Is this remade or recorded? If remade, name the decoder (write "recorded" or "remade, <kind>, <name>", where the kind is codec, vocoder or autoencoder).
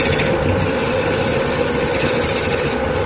recorded